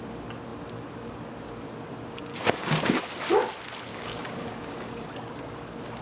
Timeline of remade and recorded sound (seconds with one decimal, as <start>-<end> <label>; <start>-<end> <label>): 0.0-2.3 recorded; 2.3-3.0 remade; 3.0-3.9 recorded; 3.9-5.1 remade; 5.1-6.0 recorded